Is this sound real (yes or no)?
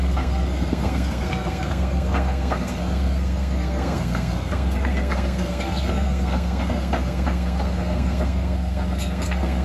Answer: no